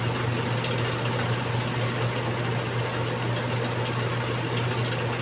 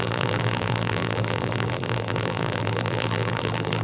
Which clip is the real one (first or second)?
first